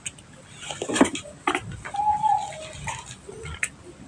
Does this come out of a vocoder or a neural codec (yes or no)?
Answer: no